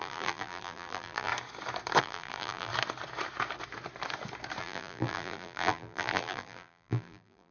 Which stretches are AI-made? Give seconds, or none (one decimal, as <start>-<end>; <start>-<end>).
0.0-1.3; 2.0-2.7; 4.6-7.5